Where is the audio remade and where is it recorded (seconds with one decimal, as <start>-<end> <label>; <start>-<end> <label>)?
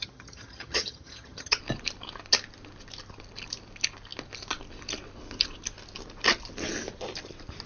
0.0-1.6 remade; 1.6-7.7 recorded